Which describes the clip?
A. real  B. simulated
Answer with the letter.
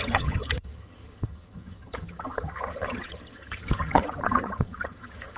B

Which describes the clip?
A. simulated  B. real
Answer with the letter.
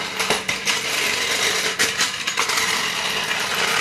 B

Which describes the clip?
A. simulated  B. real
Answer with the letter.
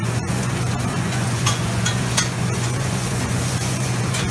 A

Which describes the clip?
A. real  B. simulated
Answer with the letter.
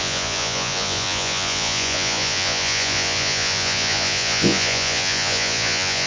B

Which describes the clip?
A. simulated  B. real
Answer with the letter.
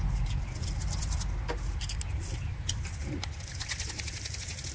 B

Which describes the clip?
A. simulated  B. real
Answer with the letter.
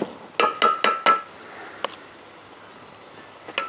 B